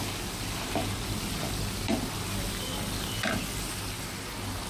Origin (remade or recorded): recorded